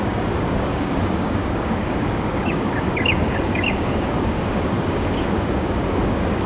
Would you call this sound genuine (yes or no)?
no